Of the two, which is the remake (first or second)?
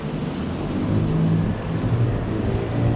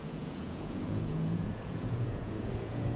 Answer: second